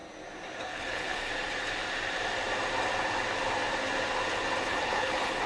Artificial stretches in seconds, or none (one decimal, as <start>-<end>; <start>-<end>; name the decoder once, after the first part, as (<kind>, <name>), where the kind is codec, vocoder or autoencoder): 0.6-1.3 (codec, HILCodec); 4.6-5.5